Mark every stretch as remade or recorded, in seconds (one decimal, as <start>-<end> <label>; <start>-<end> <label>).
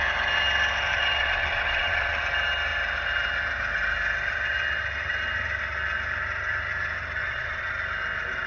0.0-0.9 recorded; 0.9-2.2 remade; 2.2-7.2 recorded; 7.2-7.7 remade; 7.7-8.5 recorded